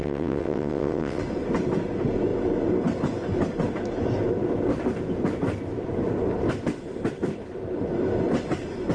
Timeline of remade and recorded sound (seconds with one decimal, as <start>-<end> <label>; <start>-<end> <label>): 0.0-1.2 remade; 1.2-8.9 recorded